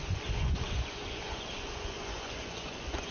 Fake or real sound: fake